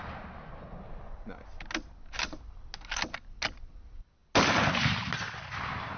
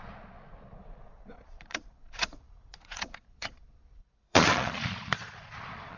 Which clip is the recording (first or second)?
first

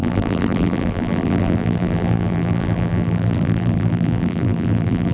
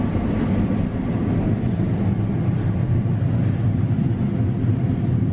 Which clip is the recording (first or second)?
second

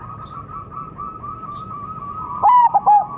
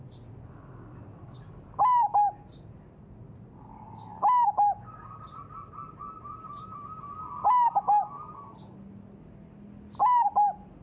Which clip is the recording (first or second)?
second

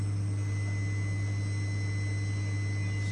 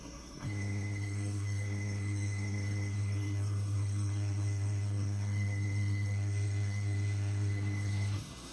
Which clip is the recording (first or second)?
first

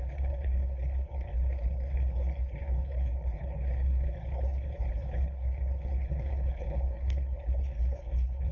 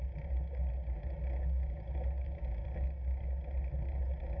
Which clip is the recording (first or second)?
second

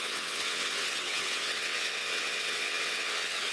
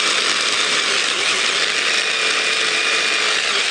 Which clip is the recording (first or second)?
second